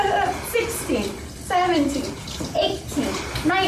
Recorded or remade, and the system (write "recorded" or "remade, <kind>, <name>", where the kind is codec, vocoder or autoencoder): recorded